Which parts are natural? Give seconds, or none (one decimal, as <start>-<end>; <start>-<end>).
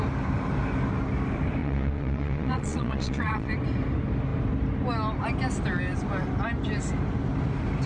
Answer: 0.0-1.6; 3.5-7.9